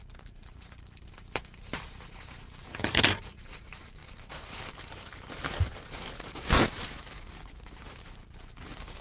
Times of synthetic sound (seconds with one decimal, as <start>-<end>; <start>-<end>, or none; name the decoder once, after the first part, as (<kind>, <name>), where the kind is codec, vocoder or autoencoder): 0.0-9.0 (vocoder, BigVGAN v2)